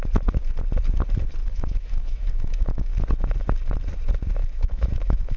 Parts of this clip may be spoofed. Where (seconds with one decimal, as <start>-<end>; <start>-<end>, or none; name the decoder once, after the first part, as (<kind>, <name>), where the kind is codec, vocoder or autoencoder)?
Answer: 1.4-3.0 (autoencoder, DAC-VAE); 4.4-5.4